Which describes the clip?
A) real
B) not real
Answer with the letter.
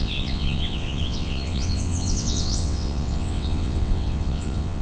B